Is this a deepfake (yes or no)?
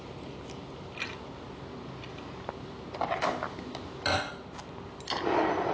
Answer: no